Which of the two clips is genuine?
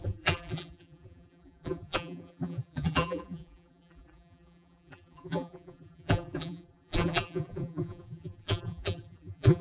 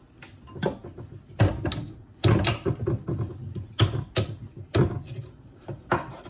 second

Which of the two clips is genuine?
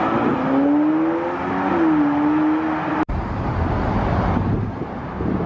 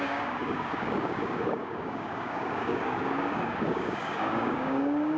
first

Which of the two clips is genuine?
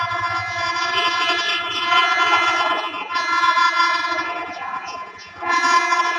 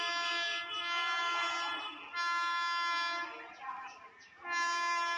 second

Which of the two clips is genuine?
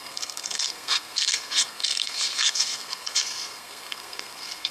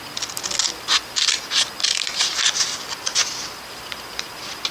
second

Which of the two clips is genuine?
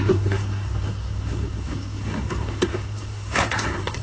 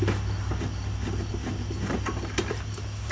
second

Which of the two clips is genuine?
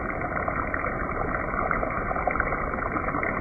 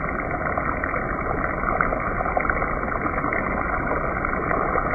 second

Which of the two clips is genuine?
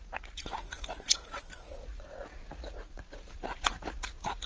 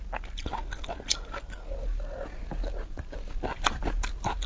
second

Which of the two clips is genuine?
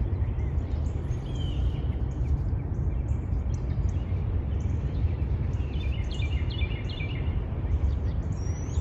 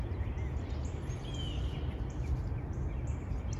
second